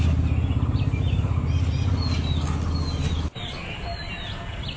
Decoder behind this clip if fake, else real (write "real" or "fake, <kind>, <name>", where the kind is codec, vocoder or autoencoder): real